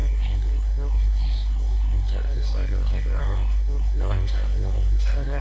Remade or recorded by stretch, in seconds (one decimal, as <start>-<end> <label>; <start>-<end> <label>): 0.0-5.4 remade